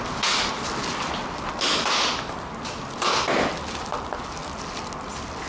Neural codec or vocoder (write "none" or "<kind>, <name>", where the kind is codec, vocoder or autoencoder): none